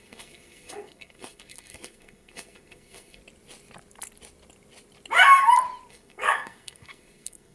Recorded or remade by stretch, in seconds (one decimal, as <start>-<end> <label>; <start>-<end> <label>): 0.0-3.2 remade; 3.2-5.9 recorded; 5.9-7.5 remade